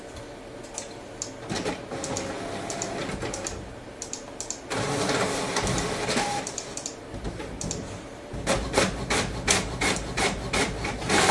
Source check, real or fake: real